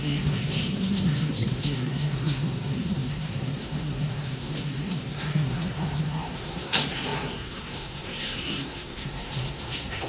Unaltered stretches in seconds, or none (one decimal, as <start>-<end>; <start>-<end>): none